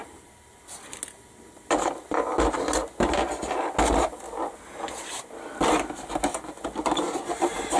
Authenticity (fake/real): real